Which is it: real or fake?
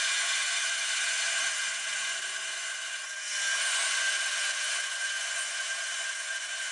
fake